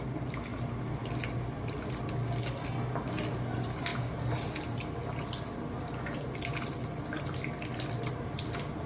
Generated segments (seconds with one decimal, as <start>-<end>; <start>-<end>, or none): none